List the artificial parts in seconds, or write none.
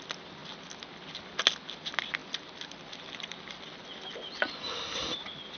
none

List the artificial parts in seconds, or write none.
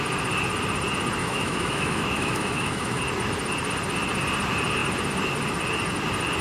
1.2-3.0 (autoencoder, DAC-VAE)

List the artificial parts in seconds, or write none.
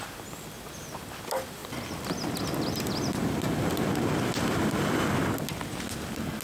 none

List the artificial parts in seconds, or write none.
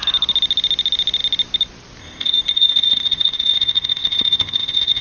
2.0-5.0 (codec, ZipCodec)